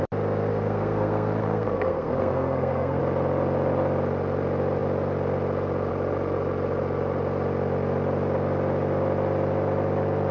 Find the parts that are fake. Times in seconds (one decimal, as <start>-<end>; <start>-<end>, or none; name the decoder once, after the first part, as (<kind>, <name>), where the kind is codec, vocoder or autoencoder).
0.5-3.0 (codec, SNAC)